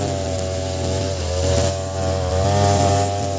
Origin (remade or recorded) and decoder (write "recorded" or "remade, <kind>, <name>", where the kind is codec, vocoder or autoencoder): recorded